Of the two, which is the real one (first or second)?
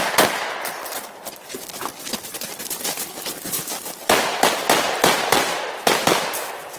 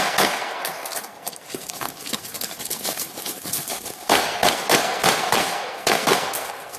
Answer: first